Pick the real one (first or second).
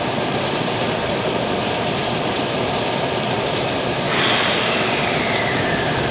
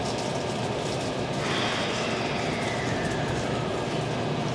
second